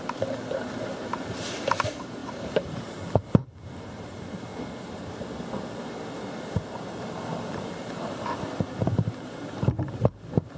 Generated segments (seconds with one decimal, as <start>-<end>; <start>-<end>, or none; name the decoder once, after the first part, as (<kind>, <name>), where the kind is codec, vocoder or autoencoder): 0.0-4.5 (vocoder, BigVGAN v2); 6.4-10.6